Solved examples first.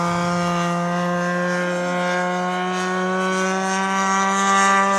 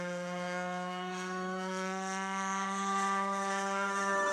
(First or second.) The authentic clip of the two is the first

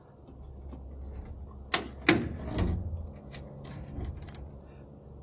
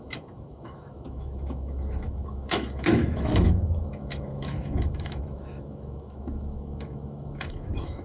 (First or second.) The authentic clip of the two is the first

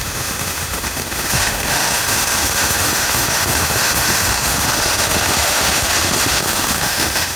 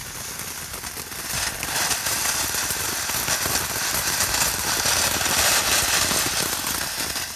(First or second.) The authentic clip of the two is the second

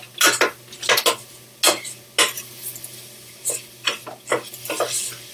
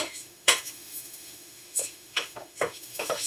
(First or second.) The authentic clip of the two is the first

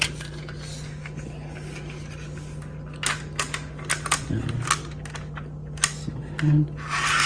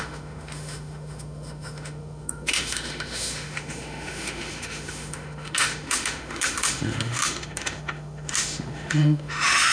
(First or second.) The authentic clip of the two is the first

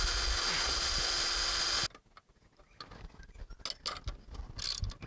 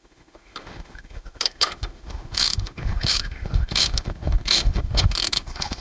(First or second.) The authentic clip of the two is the first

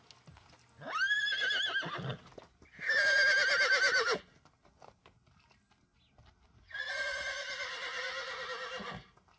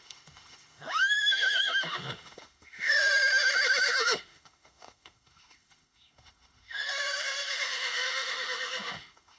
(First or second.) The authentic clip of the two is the first